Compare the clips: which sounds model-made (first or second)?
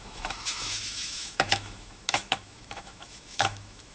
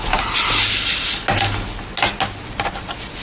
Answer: first